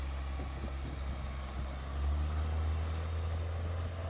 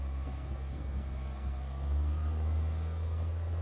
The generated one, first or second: second